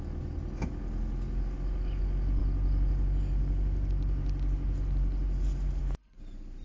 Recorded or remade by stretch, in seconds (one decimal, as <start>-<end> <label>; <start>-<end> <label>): 0.0-6.6 recorded